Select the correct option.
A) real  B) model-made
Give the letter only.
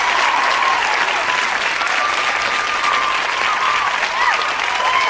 A